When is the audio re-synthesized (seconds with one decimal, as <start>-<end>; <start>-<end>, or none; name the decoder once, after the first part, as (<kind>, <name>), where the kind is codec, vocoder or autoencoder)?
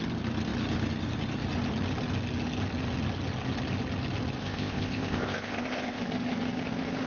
4.4-6.0 (codec, ZipCodec)